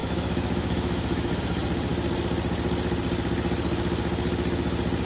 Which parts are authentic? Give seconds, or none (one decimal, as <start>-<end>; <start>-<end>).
1.4-5.1